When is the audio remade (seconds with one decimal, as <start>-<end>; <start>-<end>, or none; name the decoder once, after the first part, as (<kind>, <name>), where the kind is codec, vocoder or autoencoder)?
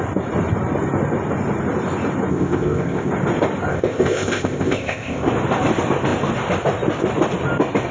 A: 2.3-3.1 (codec, ZipCodec); 3.7-5.3